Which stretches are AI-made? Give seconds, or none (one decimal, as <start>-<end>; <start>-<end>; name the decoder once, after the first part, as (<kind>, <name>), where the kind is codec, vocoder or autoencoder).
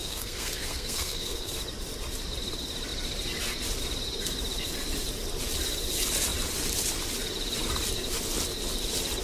0.0-1.5 (codec, SNAC)